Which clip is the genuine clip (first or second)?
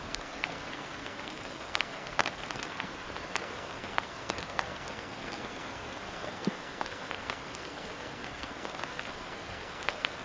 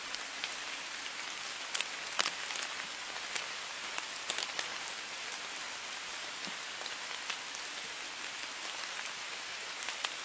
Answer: second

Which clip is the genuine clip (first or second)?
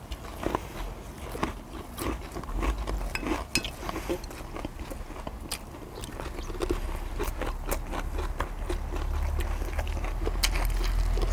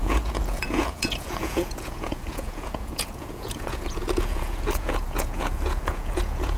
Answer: first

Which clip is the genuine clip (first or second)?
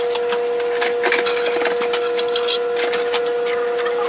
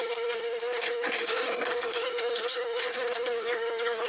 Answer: first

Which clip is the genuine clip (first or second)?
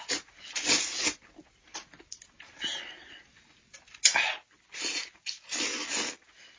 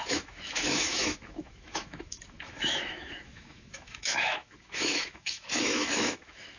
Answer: first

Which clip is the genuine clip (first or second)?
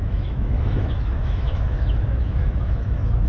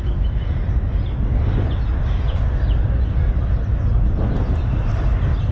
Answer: second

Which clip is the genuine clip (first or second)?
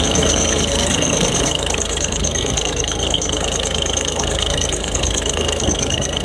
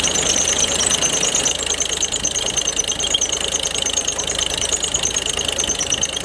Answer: second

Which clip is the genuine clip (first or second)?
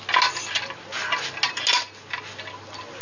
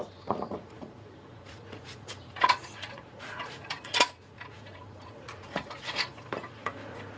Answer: first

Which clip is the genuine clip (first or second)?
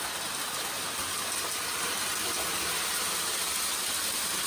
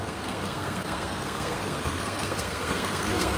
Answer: first